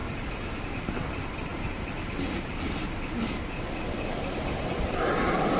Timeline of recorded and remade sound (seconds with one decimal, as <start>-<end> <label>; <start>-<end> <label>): 0.0-0.6 remade; 0.6-5.6 recorded